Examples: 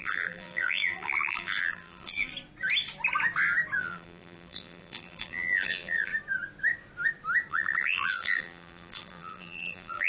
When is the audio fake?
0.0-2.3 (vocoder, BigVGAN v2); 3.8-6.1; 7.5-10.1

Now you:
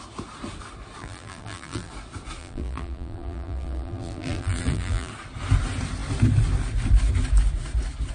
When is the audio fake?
1.0-1.9 (vocoder, BigVGAN v2); 2.4-5.1

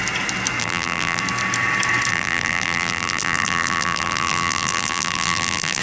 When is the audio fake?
0.6-1.2 (vocoder, BigVGAN v2); 2.1-5.8

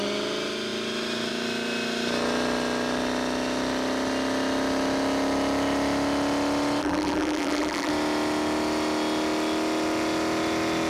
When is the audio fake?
6.8-7.9 (vocoder, BigVGAN v2)

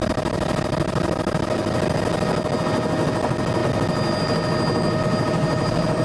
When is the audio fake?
none

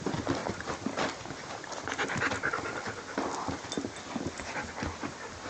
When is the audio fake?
none

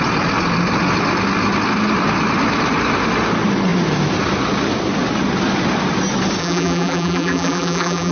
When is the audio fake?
6.4-8.1 (vocoder, BigVGAN v2)

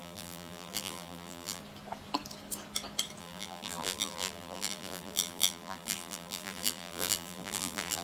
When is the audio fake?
0.0-1.6 (vocoder, BigVGAN v2); 3.2-8.0